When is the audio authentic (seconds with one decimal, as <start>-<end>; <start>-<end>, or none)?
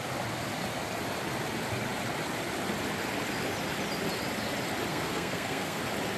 0.0-4.9; 5.8-6.2